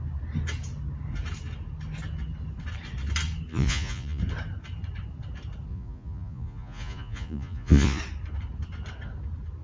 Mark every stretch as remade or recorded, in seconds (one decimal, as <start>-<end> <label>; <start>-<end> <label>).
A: 0.0-3.5 recorded; 3.5-4.2 remade; 4.2-5.7 recorded; 5.7-8.0 remade; 8.0-9.6 recorded